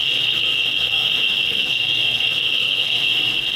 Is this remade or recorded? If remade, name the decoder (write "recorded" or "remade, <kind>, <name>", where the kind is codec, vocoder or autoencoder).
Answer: remade, codec, SNAC